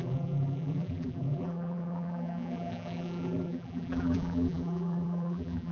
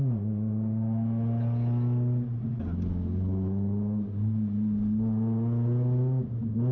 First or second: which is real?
second